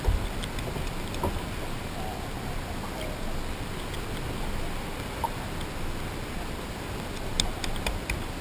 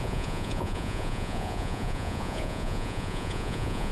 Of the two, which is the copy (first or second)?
second